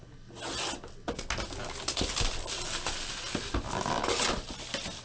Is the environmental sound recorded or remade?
recorded